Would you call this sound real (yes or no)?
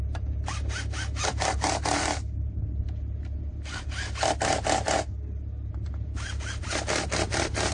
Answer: yes